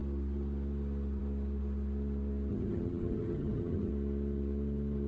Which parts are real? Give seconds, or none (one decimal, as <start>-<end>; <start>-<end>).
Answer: 0.0-2.5; 3.9-5.1